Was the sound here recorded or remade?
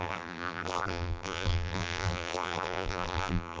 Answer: remade